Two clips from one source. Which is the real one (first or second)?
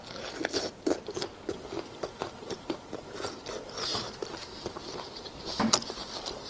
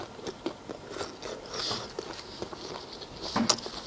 second